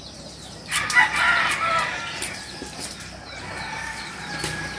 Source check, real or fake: real